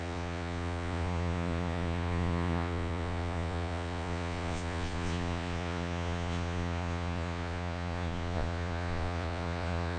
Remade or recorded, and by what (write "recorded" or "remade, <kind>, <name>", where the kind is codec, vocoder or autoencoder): remade, vocoder, Vocos